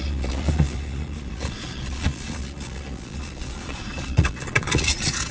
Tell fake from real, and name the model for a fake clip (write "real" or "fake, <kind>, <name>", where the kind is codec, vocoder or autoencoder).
fake, vocoder, Vocos